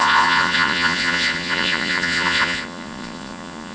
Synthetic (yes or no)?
yes